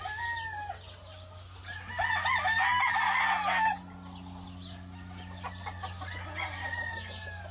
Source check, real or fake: real